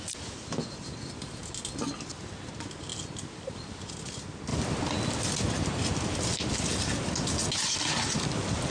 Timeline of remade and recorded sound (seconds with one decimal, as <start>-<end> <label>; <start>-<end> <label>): 0.0-8.7 recorded